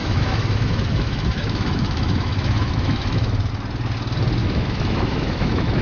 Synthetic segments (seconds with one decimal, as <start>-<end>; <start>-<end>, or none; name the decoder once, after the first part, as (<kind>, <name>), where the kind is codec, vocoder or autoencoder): 0.0-3.5 (autoencoder, DAC-VAE); 4.4-5.8